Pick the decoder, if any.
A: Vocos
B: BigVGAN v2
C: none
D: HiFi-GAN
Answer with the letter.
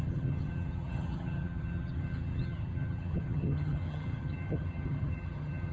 D